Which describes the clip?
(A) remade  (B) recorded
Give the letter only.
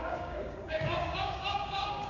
A